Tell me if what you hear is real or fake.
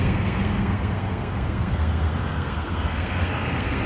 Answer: fake